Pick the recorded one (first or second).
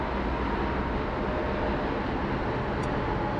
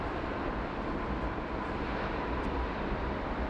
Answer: first